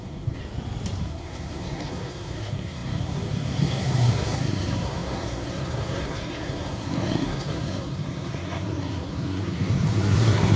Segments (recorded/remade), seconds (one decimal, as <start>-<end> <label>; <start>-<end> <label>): 0.0-0.4 remade; 0.4-1.0 recorded; 1.0-10.6 remade